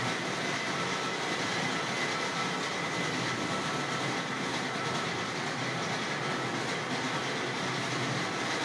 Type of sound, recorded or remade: recorded